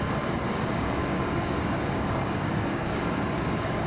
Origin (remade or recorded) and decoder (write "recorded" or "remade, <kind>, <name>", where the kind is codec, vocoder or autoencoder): remade, codec, DAC